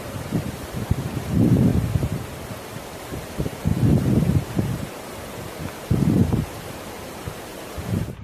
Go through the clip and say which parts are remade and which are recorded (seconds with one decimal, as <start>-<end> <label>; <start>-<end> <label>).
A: 0.0-1.7 remade; 1.7-3.0 recorded; 3.0-3.7 remade; 3.7-6.0 recorded; 6.0-8.2 remade